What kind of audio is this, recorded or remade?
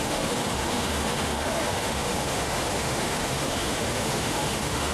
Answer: remade